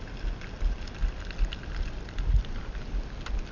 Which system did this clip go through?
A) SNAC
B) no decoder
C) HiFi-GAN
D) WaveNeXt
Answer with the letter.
B